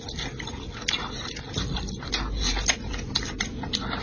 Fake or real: real